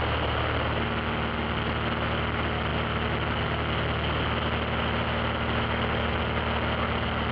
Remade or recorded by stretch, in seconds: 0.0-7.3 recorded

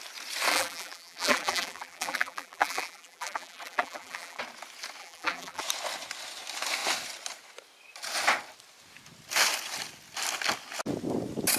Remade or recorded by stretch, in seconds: 0.0-0.5 recorded; 0.5-4.4 remade; 4.4-5.0 recorded; 5.0-5.6 remade; 5.6-11.6 recorded

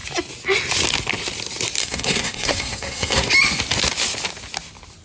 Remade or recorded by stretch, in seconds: 0.0-1.8 recorded; 1.8-3.3 remade; 3.3-5.0 recorded

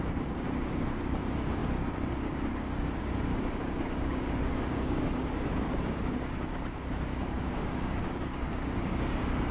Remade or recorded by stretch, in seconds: 0.0-9.5 remade

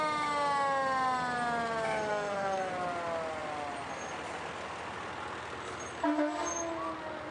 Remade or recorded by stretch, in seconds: 0.0-2.1 recorded; 2.1-2.7 remade; 2.7-7.3 recorded

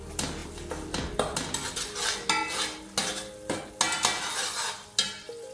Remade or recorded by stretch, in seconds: 0.0-5.5 recorded

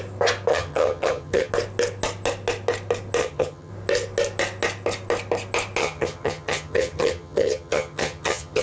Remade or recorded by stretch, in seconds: 0.0-0.5 recorded; 0.5-1.5 remade; 1.5-3.2 recorded; 3.2-3.7 remade; 3.7-5.8 recorded; 5.8-8.6 remade

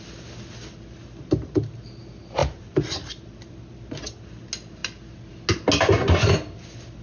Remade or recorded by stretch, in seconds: 0.0-2.4 recorded; 2.4-3.6 remade; 3.6-7.0 recorded